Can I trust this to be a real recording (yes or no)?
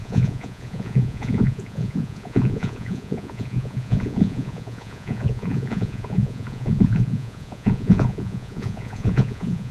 no